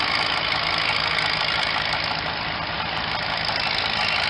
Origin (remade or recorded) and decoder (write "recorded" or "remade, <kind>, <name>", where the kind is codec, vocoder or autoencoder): recorded